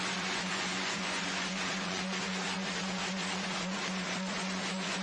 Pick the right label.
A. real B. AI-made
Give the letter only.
B